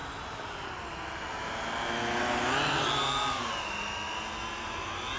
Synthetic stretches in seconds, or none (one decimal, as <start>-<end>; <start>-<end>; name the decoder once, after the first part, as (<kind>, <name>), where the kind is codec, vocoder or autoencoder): none